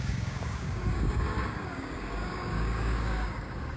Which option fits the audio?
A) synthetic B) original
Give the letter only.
A